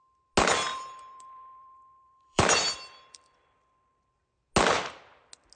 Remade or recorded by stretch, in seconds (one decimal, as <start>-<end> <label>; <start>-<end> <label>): 0.0-0.7 recorded; 0.7-4.1 remade; 4.1-5.6 recorded